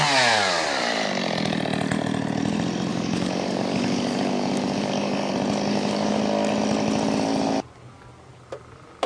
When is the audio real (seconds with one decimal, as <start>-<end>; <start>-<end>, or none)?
0.0-2.9; 5.3-5.7; 6.2-9.1